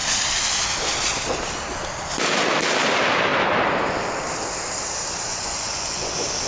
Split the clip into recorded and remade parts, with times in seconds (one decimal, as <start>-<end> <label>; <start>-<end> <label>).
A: 0.0-5.3 recorded; 5.3-6.1 remade; 6.1-6.5 recorded